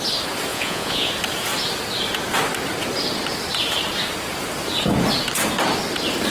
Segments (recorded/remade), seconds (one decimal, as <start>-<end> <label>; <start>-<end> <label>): 0.0-0.5 recorded; 0.5-1.1 remade; 1.1-6.3 recorded